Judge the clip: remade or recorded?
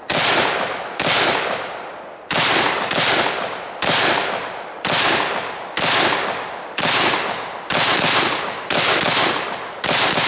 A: recorded